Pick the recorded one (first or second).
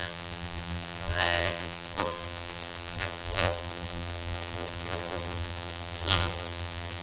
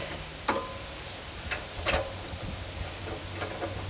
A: second